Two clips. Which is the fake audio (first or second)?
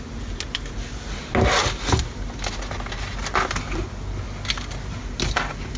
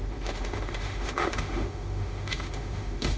second